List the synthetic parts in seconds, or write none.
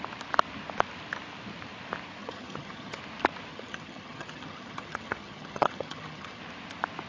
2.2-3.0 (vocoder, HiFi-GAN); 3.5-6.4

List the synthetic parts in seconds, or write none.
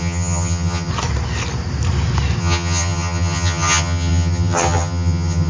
0.0-0.9 (vocoder, HiFi-GAN); 2.4-5.5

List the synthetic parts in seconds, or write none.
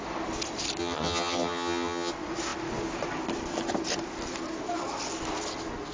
0.8-2.1 (vocoder, HiFi-GAN)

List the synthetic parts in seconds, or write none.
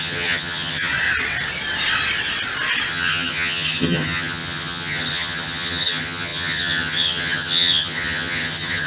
0.0-0.9 (vocoder, HiFi-GAN); 2.9-8.9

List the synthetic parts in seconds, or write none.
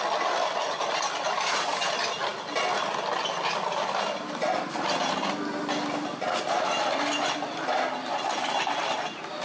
none